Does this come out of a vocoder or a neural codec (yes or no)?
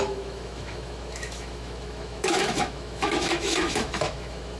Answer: yes